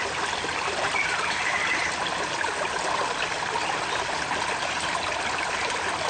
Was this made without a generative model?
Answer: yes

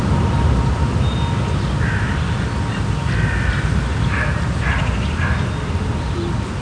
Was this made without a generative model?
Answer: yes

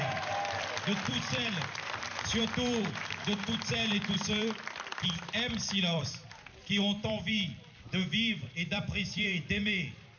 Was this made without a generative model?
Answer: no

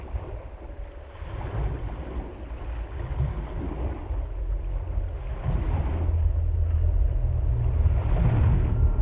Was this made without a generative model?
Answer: yes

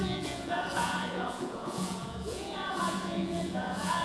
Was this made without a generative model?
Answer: no